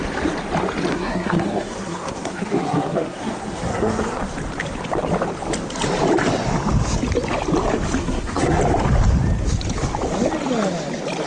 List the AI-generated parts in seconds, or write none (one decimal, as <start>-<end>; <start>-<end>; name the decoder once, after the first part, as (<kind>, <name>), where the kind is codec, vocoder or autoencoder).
0.9-4.2 (codec, SNAC); 8.0-8.6

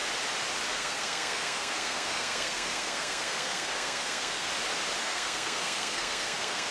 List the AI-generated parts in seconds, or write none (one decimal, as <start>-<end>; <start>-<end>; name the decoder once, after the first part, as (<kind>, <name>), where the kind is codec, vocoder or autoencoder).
0.7-4.5 (codec, SNAC); 5.0-6.7